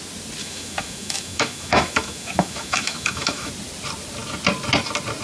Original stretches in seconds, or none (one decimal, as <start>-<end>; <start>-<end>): 0.0-0.4; 3.5-5.2